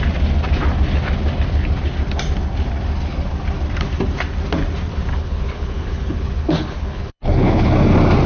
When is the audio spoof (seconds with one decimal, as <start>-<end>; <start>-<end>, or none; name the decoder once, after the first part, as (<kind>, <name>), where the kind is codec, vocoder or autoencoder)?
5.1-7.7 (codec, HILCodec)